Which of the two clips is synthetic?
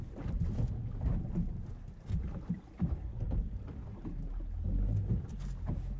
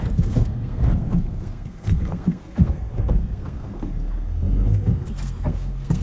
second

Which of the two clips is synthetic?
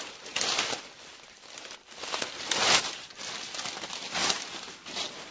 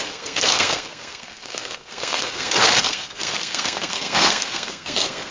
second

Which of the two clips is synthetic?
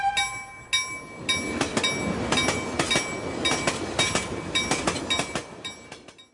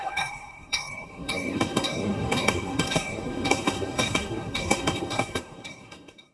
second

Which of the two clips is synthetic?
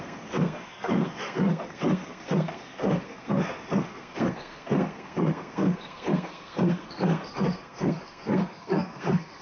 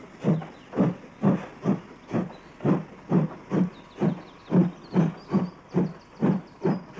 first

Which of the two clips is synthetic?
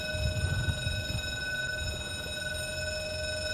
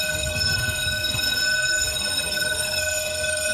second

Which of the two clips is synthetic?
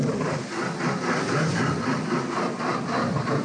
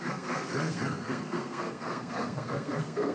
second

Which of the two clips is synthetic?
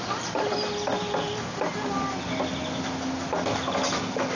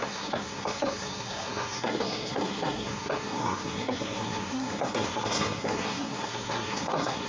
second